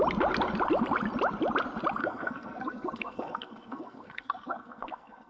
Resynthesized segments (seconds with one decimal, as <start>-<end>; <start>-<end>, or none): 2.0-5.3